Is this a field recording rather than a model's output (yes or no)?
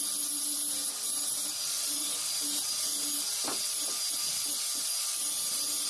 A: yes